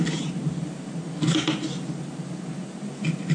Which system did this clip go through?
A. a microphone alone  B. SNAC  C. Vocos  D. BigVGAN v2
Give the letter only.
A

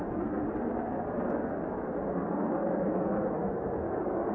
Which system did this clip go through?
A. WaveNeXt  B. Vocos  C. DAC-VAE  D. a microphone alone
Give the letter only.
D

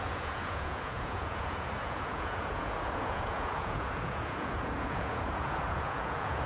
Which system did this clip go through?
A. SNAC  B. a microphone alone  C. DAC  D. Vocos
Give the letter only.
D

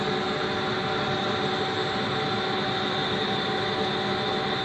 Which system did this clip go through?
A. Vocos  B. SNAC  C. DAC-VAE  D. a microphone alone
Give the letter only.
D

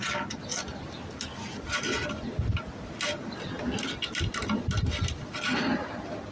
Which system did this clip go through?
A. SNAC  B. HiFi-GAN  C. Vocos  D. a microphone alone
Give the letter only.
D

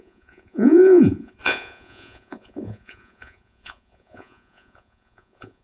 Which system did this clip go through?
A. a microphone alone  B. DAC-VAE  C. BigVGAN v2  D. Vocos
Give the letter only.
D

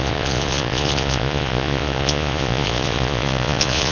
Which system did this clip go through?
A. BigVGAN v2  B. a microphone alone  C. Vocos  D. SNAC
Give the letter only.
C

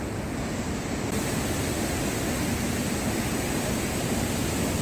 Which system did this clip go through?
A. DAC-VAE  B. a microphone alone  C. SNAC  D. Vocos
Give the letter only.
B